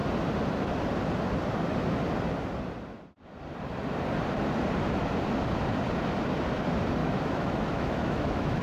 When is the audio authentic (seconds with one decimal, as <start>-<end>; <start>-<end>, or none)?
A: 0.0-7.0